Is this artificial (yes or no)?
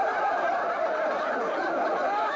no